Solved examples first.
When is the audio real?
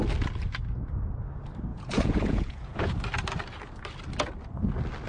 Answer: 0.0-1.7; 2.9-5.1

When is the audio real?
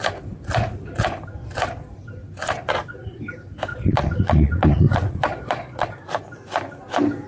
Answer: 0.0-2.4; 3.2-3.7; 5.9-7.3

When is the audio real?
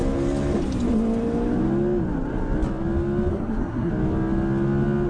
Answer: 0.0-3.3; 3.9-5.1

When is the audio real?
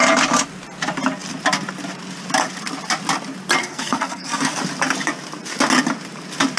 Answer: 0.0-3.6; 4.6-6.6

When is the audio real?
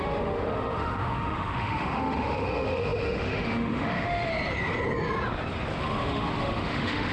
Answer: 4.3-5.8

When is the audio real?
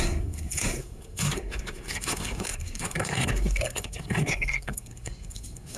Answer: none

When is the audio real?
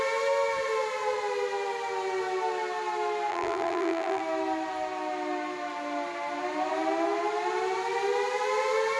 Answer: 0.0-3.3; 4.2-9.0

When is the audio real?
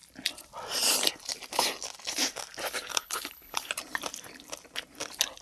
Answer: 0.0-2.9; 3.7-5.4